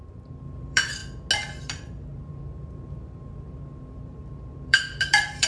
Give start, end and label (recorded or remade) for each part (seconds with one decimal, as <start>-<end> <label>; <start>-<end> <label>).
0.0-1.0 remade; 1.0-1.6 recorded; 1.6-5.5 remade